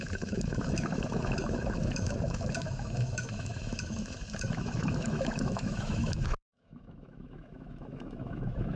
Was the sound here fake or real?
fake